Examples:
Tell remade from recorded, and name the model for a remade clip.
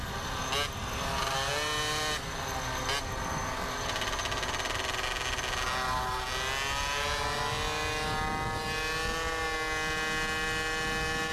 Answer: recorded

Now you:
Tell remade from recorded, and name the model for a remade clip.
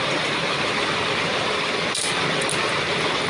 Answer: recorded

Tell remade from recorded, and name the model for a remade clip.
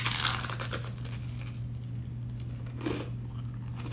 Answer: recorded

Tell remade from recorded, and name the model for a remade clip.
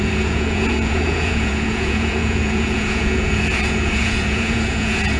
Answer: remade, vocoder, Vocos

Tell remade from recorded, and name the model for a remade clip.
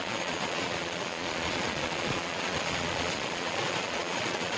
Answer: remade, vocoder, Vocos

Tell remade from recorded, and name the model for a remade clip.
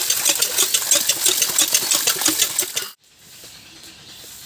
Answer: recorded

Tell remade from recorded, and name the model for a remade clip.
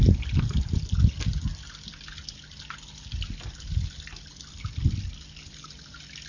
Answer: recorded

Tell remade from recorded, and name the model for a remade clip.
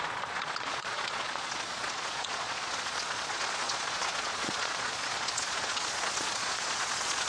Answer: remade, vocoder, Vocos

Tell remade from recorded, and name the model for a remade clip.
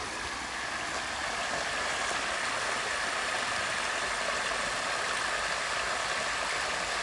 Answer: recorded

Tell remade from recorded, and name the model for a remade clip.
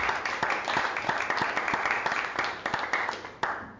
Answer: recorded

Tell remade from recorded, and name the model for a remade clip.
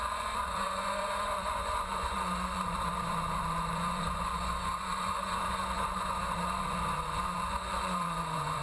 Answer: remade, vocoder, Vocos